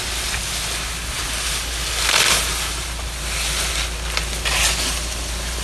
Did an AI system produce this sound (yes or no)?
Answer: no